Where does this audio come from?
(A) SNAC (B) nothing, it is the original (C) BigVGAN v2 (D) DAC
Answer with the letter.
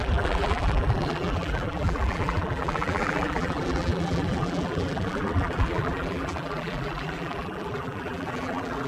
C